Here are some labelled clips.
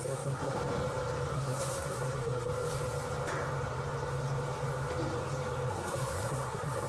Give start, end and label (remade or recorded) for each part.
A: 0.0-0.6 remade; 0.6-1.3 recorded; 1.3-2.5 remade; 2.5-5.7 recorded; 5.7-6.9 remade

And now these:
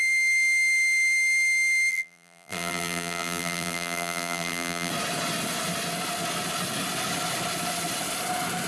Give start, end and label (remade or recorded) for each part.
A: 0.0-1.9 recorded; 1.9-4.9 remade; 4.9-8.7 recorded

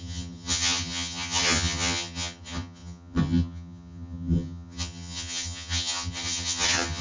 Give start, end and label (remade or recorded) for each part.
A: 0.0-7.0 remade